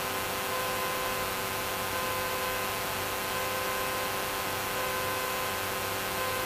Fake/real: real